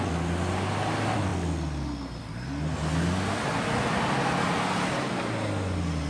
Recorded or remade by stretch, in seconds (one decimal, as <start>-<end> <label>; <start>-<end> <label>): 0.0-6.1 recorded